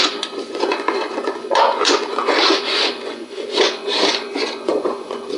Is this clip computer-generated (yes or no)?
yes